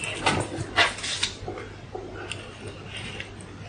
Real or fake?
real